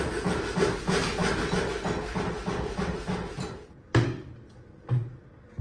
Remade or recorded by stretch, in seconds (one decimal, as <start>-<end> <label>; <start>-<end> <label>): 0.0-5.6 recorded